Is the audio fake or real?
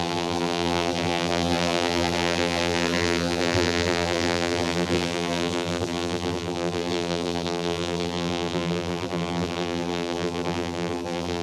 fake